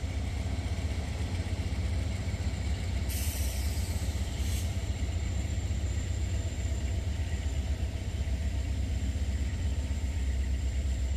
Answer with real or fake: fake